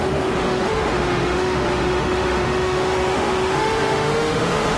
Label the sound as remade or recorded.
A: remade